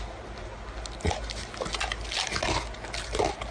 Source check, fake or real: real